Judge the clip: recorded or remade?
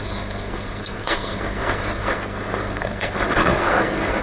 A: remade